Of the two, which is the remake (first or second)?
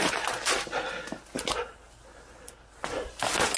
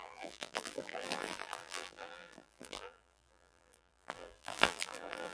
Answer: second